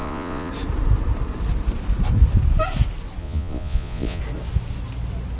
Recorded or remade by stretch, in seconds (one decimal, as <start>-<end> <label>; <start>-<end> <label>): 0.0-0.5 remade; 0.5-3.2 recorded; 3.2-4.2 remade; 4.2-5.4 recorded